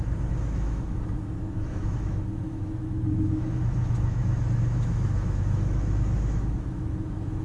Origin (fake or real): fake